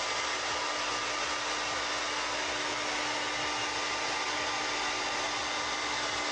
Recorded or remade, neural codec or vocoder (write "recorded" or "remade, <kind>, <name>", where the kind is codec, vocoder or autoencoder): recorded